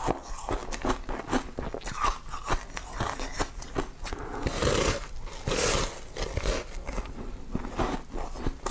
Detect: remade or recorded recorded